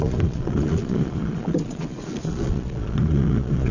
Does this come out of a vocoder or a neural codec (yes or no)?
yes